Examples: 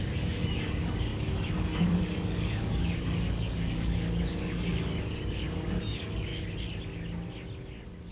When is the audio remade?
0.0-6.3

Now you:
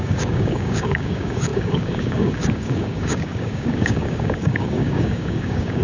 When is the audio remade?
0.0-5.8

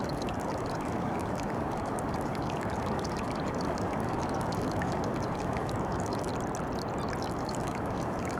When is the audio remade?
0.0-6.3; 7.2-8.4

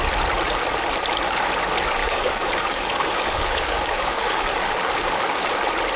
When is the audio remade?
2.0-5.5

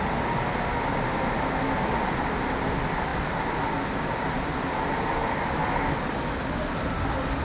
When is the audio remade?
none

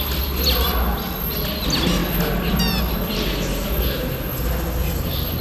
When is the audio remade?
none